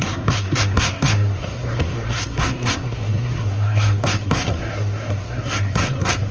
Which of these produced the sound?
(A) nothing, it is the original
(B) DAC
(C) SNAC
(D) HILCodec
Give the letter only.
C